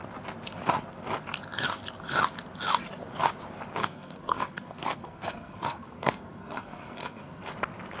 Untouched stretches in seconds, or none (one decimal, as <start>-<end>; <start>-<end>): 0.0-3.8; 7.5-8.0